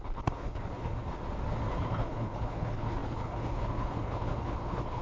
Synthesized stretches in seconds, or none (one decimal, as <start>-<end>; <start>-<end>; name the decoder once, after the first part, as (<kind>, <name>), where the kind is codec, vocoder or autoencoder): 0.0-0.9 (codec, HILCodec); 1.7-5.0